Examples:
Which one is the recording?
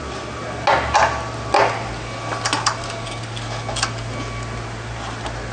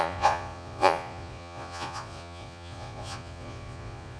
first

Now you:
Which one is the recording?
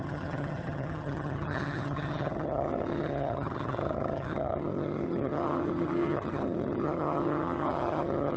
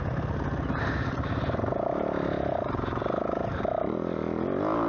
second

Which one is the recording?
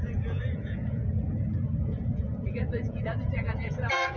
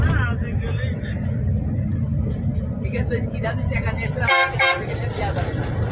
second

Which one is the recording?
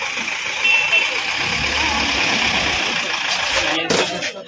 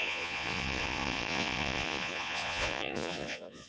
first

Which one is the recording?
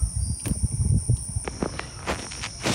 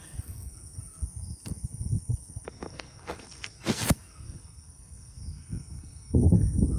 first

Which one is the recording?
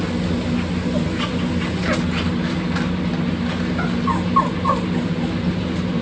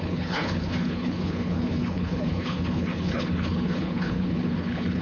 first